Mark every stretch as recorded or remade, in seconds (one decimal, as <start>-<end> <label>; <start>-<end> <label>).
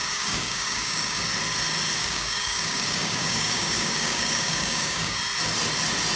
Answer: 0.0-1.2 remade; 1.2-2.0 recorded; 2.0-5.2 remade; 5.2-6.2 recorded